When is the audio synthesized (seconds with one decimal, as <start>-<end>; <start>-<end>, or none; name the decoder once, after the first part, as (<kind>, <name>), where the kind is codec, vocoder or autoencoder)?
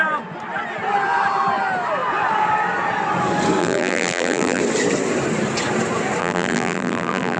3.6-4.6 (vocoder, BigVGAN v2); 6.2-7.4